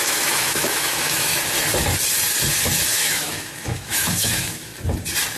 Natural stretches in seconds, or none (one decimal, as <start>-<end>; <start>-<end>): 1.3-2.9; 4.7-5.4